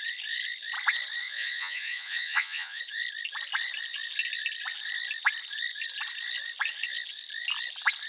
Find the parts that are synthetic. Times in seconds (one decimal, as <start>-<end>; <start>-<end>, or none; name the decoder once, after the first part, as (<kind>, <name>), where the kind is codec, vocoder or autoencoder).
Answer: 1.2-2.8 (vocoder, Vocos)

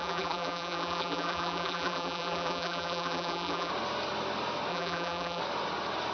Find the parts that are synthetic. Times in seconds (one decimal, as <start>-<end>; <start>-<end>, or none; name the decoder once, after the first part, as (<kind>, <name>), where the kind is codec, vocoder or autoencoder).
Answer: 0.0-3.7 (vocoder, BigVGAN v2); 4.7-5.4

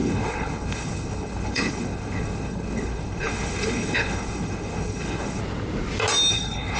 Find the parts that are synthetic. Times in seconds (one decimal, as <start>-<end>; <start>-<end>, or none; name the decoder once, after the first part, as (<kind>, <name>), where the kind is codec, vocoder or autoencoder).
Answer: 0.0-5.4 (codec, HILCodec); 6.3-6.8

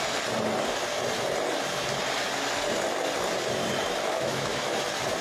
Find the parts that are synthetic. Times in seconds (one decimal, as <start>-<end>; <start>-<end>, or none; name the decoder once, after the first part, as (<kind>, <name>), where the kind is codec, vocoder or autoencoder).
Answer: 4.1-4.8 (autoencoder, DAC-VAE)